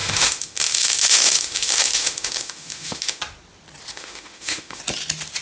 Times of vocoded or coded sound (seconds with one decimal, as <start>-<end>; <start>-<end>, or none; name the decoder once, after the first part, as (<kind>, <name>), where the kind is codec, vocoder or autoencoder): 0.0-3.2 (autoencoder, DAC-VAE); 3.9-4.8